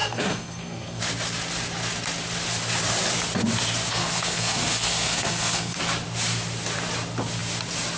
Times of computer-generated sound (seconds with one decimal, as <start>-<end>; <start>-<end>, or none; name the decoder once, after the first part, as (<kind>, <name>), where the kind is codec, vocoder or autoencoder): 0.0-1.0 (codec, SNAC); 3.9-5.8

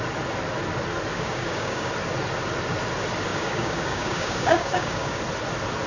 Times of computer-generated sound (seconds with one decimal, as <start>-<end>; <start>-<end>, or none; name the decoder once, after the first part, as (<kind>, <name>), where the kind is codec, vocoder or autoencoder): 1.1-1.9 (codec, DAC); 3.3-5.2

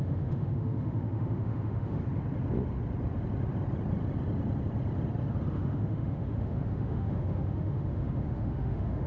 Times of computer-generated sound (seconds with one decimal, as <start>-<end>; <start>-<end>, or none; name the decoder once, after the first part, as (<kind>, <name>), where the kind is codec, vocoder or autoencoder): 0.0-2.0 (autoencoder, DAC-VAE); 5.5-9.1

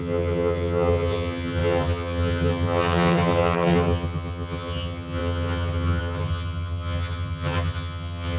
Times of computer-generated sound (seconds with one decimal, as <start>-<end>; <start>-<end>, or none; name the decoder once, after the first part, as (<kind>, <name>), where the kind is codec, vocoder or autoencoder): 0.0-8.4 (vocoder, HiFi-GAN)

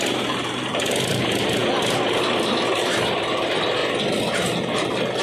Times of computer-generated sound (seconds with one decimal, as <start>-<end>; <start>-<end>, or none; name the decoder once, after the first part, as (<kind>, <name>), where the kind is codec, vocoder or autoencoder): 0.0-3.8 (vocoder, BigVGAN v2); 4.6-5.2

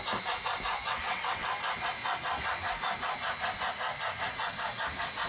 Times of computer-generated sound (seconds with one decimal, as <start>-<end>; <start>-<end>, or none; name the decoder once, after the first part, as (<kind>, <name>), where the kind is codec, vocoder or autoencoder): 0.8-1.5 (vocoder, WaveNeXt)

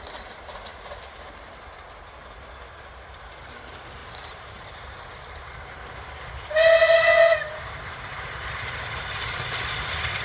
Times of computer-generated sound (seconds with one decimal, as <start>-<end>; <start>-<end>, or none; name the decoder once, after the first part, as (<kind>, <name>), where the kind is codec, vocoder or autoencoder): 4.0-4.8 (vocoder, BigVGAN v2); 7.4-8.9